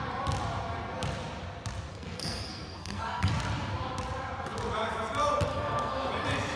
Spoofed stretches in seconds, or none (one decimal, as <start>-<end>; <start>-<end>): 1.9-3.3; 5.5-6.1